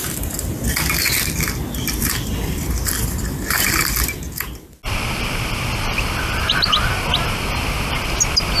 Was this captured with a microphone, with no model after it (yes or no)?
yes